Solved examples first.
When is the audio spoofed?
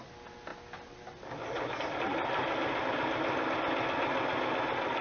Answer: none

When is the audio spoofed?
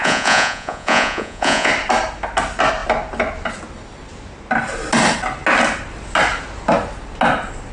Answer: 0.0-1.7 (vocoder, Vocos)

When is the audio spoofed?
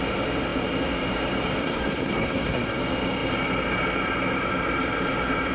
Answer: 1.6-2.8 (codec, SNAC)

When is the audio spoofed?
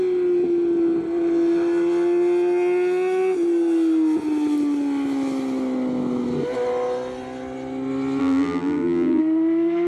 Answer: 8.2-9.2 (vocoder, BigVGAN v2)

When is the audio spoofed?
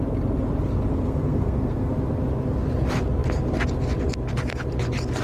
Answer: 0.9-1.9 (codec, SNAC)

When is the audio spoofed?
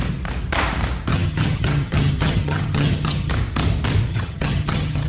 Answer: 1.1-3.3 (vocoder, HiFi-GAN); 4.1-5.1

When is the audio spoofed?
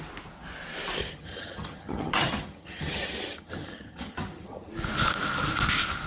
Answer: 1.0-4.7 (vocoder, HiFi-GAN)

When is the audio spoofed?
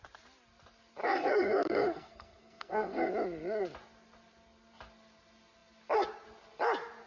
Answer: 1.0-3.1 (codec, SNAC)